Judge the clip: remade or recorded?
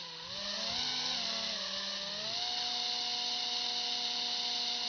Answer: recorded